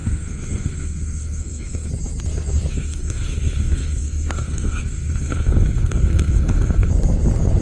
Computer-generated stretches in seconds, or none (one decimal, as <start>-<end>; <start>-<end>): 0.0-1.9; 2.7-6.9